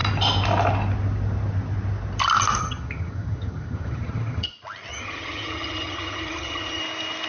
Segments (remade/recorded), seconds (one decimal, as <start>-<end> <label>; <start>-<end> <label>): 0.0-2.6 recorded; 2.6-4.5 remade; 4.5-4.9 recorded; 4.9-6.8 remade; 6.8-7.3 recorded